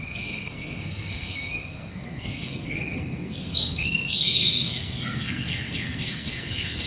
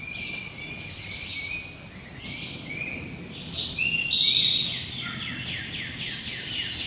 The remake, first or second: first